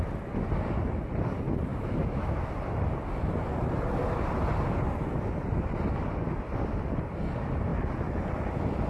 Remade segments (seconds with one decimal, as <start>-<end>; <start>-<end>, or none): 1.7-2.5